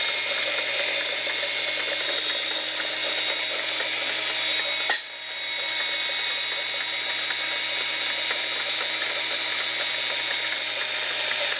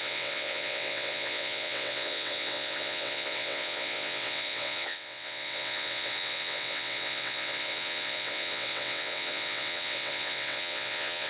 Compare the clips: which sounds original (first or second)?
first